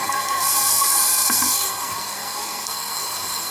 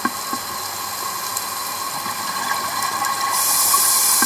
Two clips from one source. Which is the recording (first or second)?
second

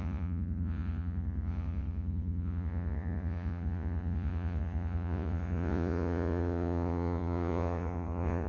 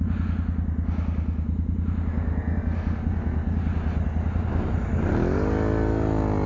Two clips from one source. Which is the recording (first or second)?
second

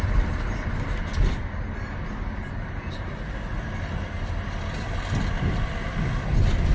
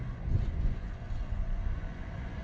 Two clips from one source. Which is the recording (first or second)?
first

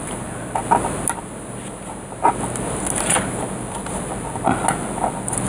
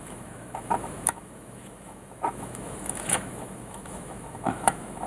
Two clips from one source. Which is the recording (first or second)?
first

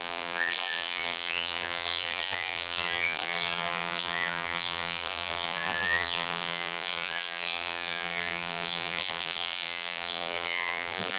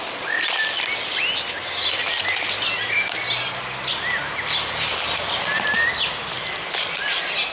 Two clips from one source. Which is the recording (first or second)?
second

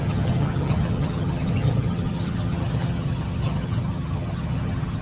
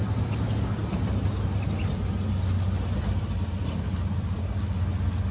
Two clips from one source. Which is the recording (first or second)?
second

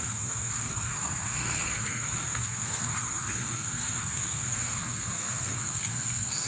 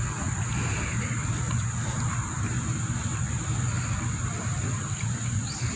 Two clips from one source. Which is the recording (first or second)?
second